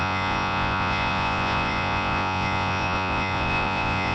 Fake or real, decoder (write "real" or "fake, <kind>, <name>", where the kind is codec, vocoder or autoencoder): fake, vocoder, Vocos